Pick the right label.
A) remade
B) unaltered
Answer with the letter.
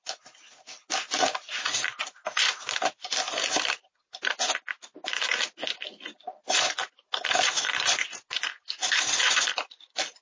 B